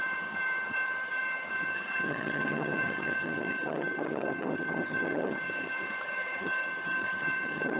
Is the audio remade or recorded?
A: remade